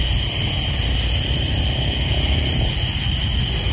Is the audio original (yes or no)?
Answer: yes